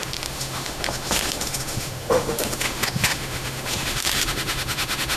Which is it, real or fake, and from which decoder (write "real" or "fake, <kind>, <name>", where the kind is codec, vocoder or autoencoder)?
fake, autoencoder, DAC-VAE